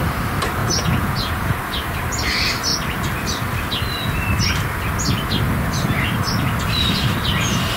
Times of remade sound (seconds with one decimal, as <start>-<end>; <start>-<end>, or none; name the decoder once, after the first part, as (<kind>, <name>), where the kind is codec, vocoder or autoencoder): 0.6-1.6 (vocoder, Vocos)